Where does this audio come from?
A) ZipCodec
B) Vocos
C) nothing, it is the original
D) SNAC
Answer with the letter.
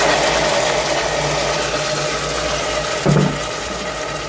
C